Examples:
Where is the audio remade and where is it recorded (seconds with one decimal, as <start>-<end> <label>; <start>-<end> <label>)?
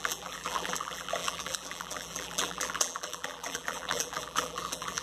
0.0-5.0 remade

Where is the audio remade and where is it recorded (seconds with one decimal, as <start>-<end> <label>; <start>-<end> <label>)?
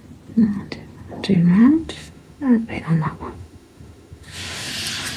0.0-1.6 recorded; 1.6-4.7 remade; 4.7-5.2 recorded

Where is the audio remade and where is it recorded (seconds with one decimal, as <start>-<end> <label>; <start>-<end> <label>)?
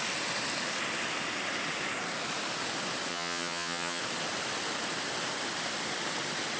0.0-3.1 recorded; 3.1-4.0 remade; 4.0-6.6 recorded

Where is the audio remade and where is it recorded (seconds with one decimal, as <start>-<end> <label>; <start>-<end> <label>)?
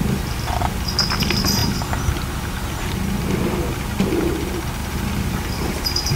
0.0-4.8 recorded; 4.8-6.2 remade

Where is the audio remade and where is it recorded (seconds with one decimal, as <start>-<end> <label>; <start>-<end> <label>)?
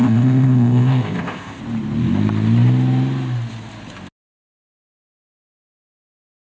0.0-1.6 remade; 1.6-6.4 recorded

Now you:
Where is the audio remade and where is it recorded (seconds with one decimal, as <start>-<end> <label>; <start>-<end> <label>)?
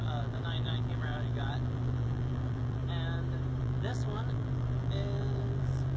0.0-2.8 remade; 2.8-3.6 recorded; 3.6-6.0 remade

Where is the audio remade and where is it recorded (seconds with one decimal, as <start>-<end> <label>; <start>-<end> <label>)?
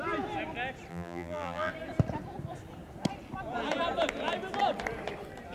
0.0-0.9 recorded; 0.9-1.7 remade; 1.7-5.5 recorded